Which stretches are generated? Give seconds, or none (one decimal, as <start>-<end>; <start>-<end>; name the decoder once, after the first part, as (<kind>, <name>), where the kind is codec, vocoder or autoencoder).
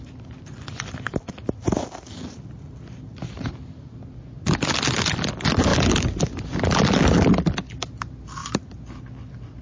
none